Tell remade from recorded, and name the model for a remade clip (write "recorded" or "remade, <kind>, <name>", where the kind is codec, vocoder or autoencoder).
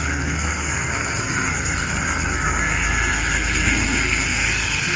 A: remade, codec, SNAC